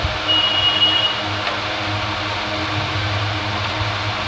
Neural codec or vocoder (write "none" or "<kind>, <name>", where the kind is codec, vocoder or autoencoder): none